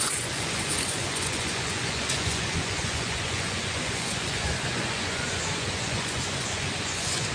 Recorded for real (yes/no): no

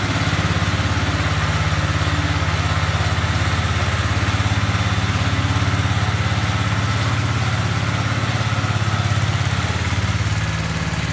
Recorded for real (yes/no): yes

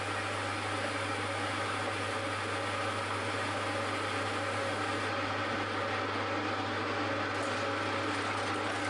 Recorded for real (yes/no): yes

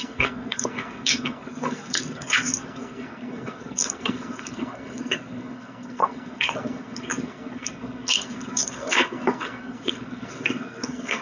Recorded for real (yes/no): no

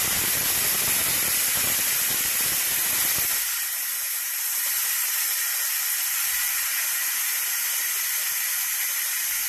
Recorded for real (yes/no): yes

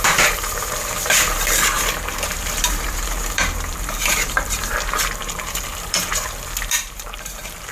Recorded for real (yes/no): no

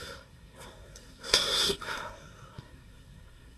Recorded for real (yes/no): no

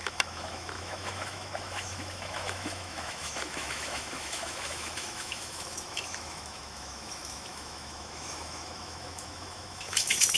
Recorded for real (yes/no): no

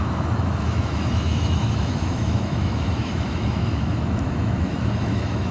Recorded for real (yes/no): no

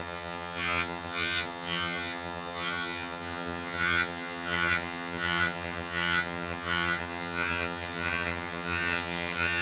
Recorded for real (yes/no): no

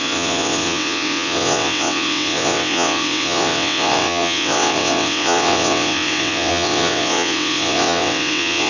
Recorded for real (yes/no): no